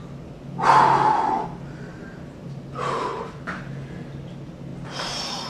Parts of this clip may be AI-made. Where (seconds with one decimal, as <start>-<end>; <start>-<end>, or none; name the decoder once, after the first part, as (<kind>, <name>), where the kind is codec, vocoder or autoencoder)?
2.0-2.6 (vocoder, BigVGAN v2); 3.1-3.7; 4.7-5.5